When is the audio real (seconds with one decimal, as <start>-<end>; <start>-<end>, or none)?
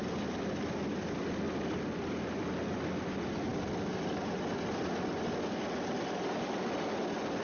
0.0-7.4